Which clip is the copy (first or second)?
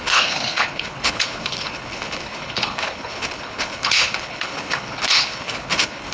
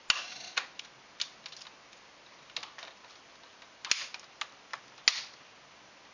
first